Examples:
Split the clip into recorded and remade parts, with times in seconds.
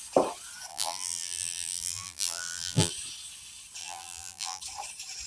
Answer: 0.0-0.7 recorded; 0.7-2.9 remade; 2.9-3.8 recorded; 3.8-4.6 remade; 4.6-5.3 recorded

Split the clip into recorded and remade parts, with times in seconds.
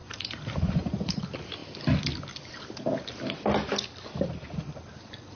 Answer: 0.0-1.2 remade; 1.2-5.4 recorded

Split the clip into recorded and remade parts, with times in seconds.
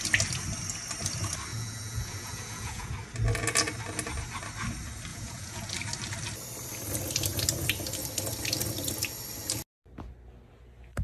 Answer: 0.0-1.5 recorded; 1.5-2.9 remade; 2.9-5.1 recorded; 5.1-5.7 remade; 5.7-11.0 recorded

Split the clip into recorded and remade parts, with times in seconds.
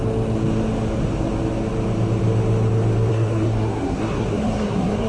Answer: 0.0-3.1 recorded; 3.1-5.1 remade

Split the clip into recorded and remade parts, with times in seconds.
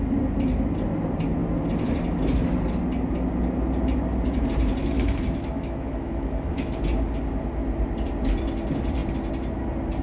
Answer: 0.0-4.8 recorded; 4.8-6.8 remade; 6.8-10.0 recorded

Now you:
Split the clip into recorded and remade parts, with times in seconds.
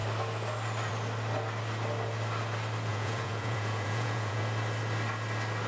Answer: 0.0-2.9 recorded; 2.9-4.4 remade; 4.4-5.7 recorded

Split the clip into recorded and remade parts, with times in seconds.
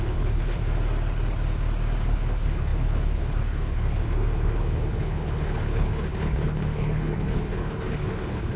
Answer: 0.0-0.6 remade; 0.6-2.0 recorded; 2.0-8.6 remade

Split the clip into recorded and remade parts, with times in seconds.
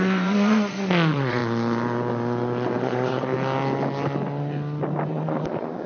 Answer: 0.0-1.4 remade; 1.4-2.8 recorded; 2.8-3.3 remade; 3.3-5.1 recorded; 5.1-5.9 remade